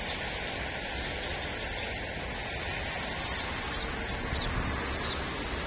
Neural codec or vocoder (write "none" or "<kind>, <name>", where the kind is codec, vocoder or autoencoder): none